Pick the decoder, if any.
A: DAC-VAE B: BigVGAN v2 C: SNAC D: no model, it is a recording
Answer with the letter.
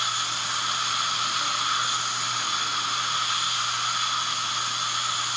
D